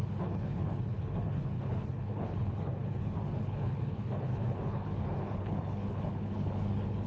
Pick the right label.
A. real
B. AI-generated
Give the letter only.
B